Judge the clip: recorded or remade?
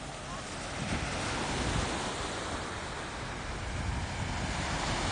recorded